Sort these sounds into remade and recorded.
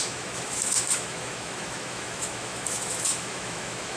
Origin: remade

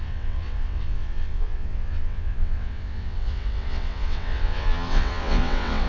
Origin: remade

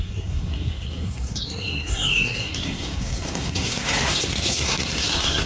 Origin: remade